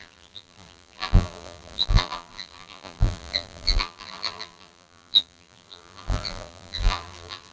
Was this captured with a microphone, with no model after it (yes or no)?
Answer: no